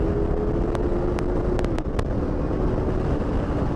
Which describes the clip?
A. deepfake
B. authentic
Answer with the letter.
B